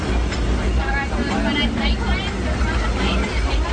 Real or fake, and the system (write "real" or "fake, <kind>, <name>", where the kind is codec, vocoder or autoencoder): real